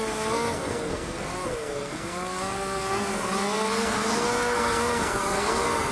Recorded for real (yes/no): no